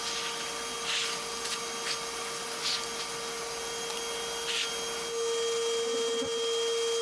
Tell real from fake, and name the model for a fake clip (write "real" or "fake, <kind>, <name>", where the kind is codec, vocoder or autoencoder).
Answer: real